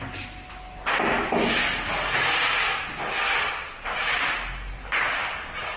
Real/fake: real